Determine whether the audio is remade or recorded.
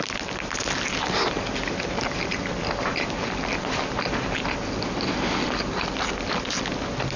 recorded